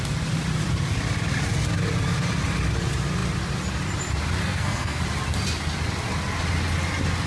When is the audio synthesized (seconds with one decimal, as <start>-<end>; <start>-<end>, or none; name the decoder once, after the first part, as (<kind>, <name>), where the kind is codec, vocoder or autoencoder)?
4.4-5.0 (codec, SNAC)